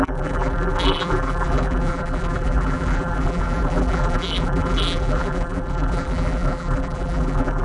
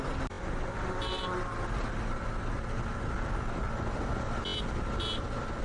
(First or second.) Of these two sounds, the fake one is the first